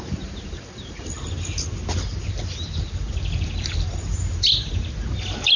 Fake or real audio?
real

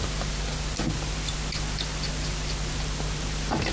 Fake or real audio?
real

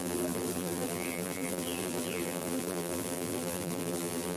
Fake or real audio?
fake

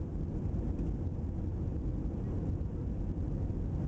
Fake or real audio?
real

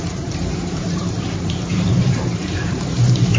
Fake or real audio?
fake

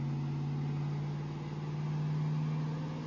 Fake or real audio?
real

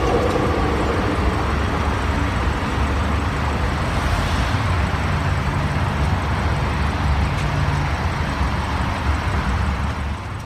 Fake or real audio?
real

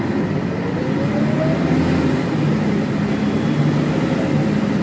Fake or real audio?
real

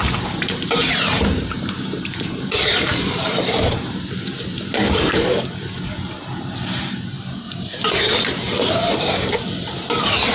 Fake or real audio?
fake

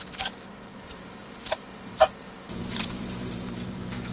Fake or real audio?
fake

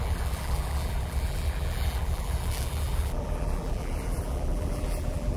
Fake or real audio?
fake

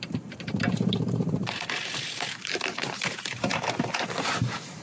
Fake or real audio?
fake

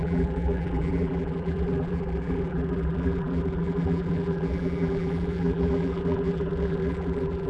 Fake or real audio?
fake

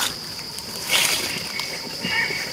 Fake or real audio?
fake